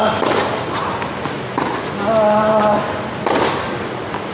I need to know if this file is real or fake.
real